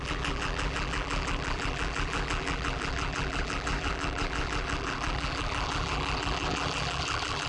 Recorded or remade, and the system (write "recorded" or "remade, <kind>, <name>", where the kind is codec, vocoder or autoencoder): remade, vocoder, BigVGAN v2